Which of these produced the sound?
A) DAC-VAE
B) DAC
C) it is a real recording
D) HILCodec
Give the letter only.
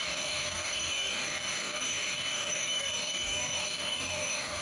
B